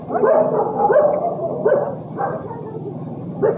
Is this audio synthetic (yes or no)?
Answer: yes